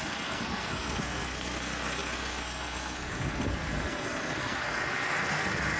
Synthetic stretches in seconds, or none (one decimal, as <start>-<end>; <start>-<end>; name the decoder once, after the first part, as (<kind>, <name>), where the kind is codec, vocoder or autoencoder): 0.0-5.8 (codec, SNAC)